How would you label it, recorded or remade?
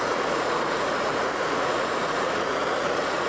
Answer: remade